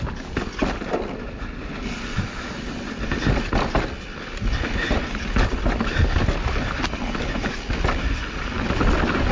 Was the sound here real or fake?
real